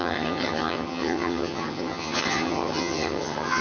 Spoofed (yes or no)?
yes